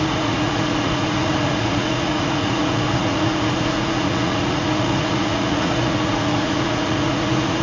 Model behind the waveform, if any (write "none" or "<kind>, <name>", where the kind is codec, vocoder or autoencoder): vocoder, Vocos